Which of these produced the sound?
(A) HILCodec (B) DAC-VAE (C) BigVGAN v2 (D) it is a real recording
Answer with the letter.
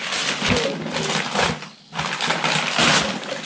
D